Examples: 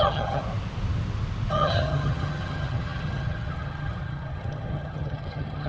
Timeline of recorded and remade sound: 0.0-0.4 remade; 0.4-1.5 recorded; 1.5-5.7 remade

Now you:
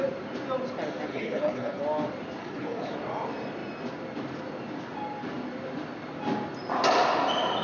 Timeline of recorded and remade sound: 0.0-1.1 recorded; 1.1-1.8 remade; 1.8-2.4 recorded; 2.4-2.9 remade; 2.9-7.6 recorded

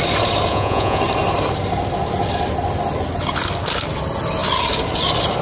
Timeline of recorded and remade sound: 0.0-0.5 recorded; 0.5-1.0 remade; 1.0-5.4 recorded

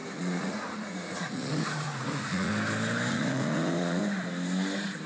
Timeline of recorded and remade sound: 0.0-2.5 remade; 2.5-3.1 recorded; 3.1-4.0 remade; 4.0-5.1 recorded

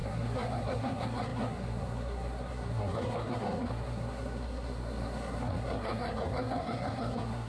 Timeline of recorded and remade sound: 0.0-7.5 remade

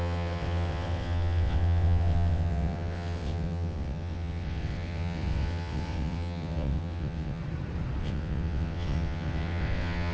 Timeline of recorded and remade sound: 0.0-7.4 remade; 7.4-8.0 recorded; 8.0-10.1 remade

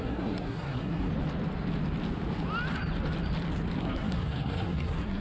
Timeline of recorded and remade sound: 0.0-1.1 remade; 1.1-3.8 recorded; 3.8-5.2 remade

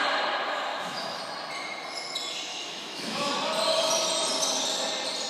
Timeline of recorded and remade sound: 0.0-0.7 recorded; 0.7-1.2 remade; 1.2-2.5 recorded; 2.5-3.3 remade; 3.3-5.3 recorded